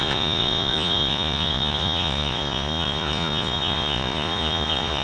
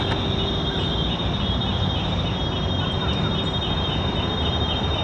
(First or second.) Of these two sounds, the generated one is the first